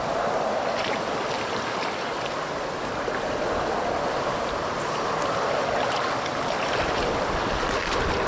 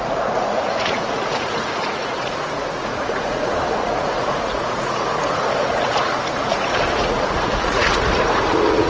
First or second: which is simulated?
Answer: second